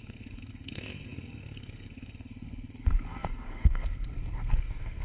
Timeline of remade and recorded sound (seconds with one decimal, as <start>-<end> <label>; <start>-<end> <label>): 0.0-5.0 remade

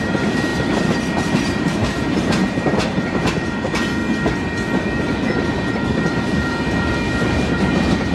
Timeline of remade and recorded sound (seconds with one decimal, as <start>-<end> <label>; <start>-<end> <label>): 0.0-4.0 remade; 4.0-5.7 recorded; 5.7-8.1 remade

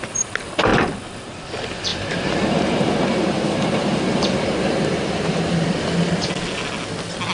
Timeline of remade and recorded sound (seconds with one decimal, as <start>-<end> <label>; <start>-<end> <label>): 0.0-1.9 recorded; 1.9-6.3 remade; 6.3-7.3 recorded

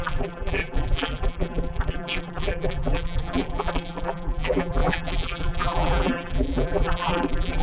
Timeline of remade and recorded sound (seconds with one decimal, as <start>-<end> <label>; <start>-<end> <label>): 0.0-7.6 remade

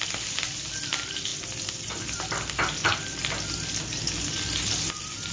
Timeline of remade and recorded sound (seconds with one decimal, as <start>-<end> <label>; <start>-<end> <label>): 0.0-5.3 recorded

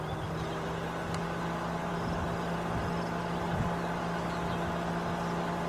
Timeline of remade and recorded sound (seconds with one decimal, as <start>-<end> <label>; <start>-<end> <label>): 0.0-5.7 recorded